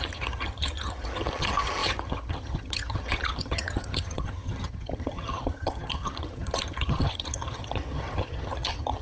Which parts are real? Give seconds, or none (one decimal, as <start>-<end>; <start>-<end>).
none